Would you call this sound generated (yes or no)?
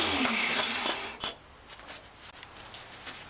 no